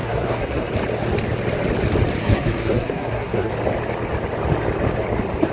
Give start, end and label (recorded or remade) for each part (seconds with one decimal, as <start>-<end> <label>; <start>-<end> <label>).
0.0-0.7 remade; 0.7-2.2 recorded; 2.2-3.5 remade; 3.5-5.5 recorded